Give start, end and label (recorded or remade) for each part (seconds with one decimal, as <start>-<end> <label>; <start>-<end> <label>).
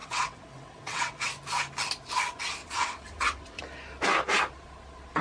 0.0-1.3 remade; 1.3-2.6 recorded; 2.6-3.6 remade; 3.6-5.2 recorded